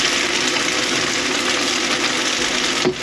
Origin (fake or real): real